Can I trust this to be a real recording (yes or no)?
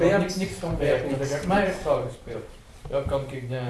no